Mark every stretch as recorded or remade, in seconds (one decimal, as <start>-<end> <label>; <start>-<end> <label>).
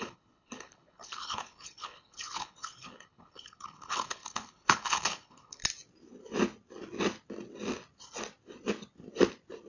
0.0-5.6 remade; 5.6-9.7 recorded